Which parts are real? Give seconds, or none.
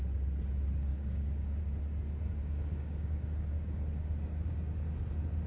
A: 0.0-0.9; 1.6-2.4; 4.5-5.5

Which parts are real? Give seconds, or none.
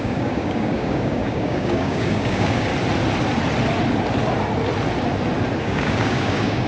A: 2.7-5.6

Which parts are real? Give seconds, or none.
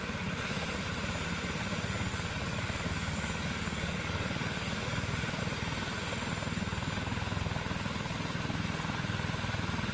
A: 0.0-2.1; 5.4-9.9